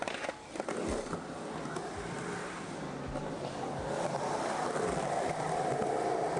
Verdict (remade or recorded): recorded